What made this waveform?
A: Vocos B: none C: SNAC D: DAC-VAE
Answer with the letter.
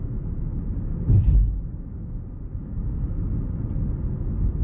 B